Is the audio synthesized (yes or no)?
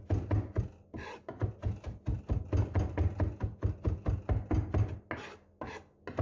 no